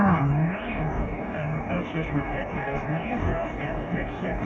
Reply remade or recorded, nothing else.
remade